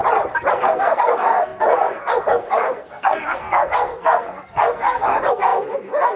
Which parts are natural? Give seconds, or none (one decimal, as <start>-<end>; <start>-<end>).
0.0-0.5